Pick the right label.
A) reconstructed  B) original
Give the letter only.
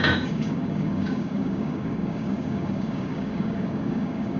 A